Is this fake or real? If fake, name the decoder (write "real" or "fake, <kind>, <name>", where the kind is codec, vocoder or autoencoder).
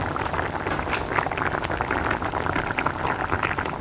real